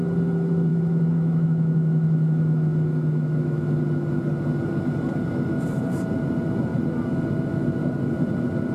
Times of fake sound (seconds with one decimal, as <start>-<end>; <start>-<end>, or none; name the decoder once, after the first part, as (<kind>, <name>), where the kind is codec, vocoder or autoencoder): 0.7-3.7 (autoencoder, DAC-VAE)